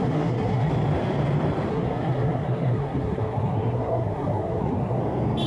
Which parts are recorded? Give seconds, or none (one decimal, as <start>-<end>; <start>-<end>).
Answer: 0.7-1.7; 5.0-5.5